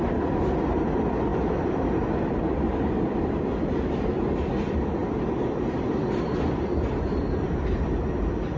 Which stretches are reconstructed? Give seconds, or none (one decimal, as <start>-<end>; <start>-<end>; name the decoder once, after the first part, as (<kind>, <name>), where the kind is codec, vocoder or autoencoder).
none